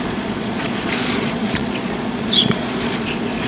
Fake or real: fake